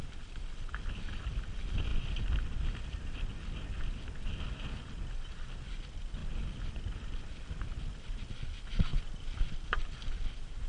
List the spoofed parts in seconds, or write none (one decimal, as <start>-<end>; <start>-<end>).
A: none